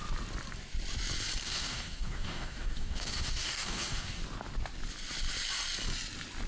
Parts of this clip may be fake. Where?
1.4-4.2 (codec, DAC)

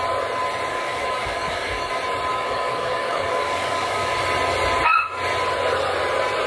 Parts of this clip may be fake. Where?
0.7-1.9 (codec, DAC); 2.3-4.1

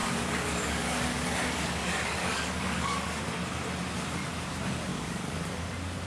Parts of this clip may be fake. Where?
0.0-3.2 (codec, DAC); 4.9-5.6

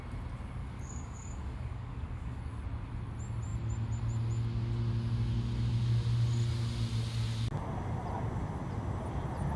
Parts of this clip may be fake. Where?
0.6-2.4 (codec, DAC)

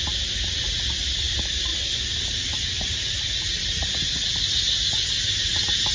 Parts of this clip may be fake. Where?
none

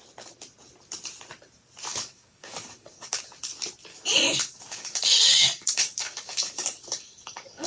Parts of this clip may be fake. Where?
1.9-3.2 (codec, DAC); 3.9-7.7